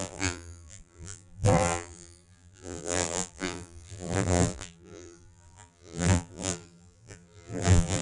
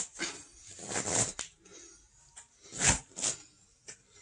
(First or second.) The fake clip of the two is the first